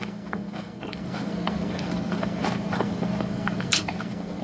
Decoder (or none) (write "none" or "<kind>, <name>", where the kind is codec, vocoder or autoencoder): codec, SNAC